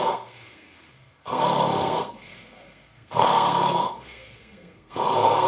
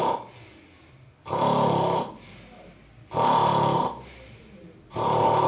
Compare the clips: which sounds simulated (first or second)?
first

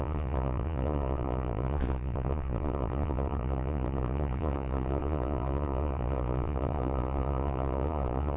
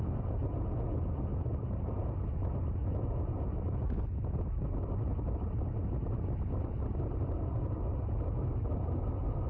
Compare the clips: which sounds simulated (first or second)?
first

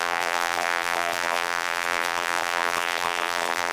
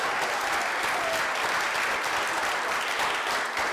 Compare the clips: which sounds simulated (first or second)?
first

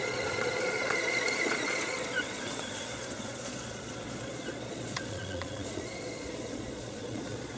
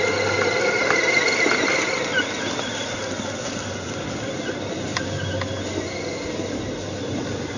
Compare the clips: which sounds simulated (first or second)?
first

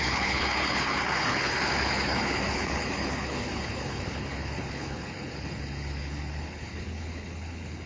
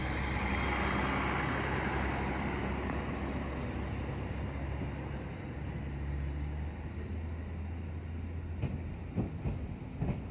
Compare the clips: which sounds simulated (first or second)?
first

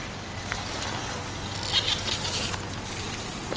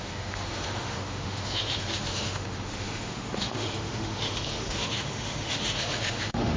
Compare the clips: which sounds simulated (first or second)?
second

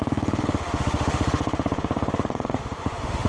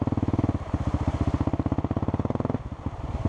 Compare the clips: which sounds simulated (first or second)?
first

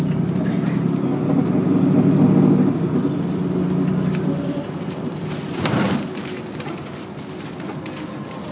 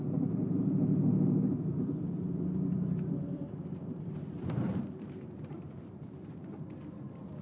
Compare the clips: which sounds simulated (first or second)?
second